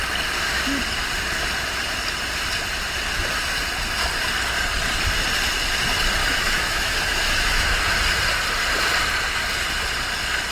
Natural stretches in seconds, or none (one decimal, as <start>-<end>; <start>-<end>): 0.0-6.2; 7.8-10.5